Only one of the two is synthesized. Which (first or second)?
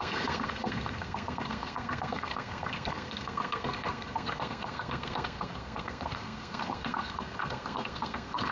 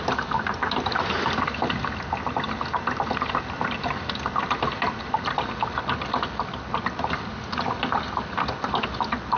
first